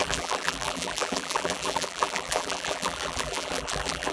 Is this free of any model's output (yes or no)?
no